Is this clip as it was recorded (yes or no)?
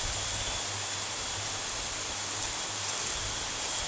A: yes